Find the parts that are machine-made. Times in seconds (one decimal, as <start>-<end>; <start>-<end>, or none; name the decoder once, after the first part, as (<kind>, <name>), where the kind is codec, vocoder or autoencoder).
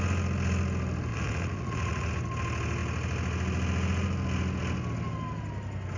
1.1-2.1 (vocoder, Vocos)